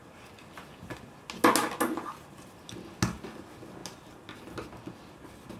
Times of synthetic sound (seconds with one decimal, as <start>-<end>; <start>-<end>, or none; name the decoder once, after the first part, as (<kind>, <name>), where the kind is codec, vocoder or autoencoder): none